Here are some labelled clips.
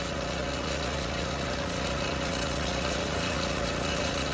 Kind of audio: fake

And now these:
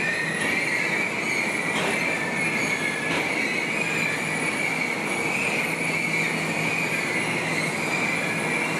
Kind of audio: real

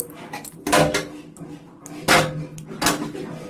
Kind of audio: real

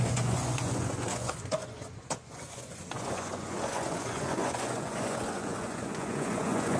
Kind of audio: fake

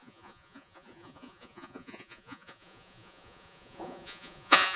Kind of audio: fake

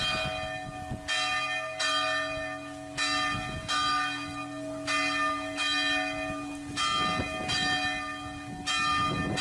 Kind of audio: real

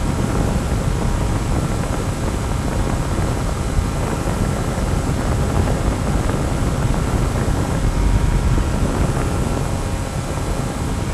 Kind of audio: real